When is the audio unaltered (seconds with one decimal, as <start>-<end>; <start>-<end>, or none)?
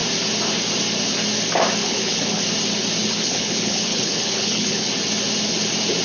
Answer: 0.0-1.8; 2.4-3.0; 4.9-6.0